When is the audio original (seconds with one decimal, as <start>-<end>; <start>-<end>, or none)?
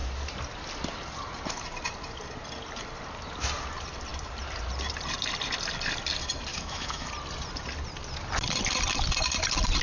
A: 0.0-6.5; 7.1-9.8